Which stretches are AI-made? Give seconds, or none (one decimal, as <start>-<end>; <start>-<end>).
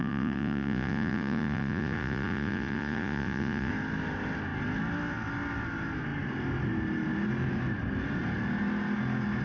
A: 0.0-3.7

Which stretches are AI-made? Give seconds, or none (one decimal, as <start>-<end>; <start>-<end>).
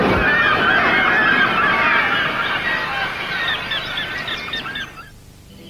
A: none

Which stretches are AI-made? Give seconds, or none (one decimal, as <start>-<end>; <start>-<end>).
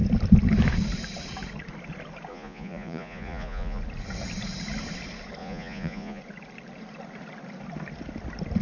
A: 2.3-3.8; 5.4-6.2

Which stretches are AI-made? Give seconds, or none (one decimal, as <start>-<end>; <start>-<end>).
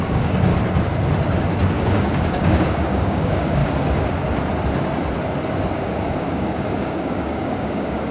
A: 0.0-0.5; 1.8-3.6; 6.2-8.1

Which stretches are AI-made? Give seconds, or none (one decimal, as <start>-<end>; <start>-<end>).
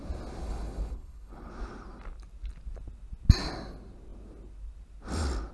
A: 0.4-1.5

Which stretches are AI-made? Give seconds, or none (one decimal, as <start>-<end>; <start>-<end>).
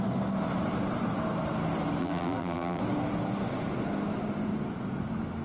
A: 2.0-2.8